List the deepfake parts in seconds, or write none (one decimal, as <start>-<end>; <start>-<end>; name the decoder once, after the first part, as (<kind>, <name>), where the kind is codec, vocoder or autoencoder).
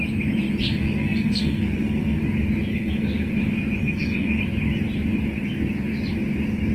0.6-2.2 (codec, SNAC); 2.7-3.3; 3.8-4.4